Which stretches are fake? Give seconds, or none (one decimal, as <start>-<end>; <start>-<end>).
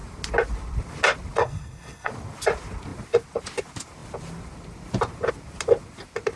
1.4-2.1